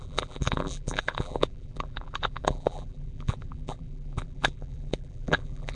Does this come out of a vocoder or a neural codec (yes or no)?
yes